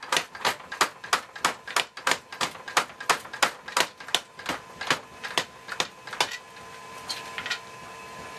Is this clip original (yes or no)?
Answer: yes